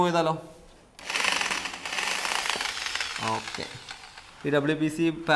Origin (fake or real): real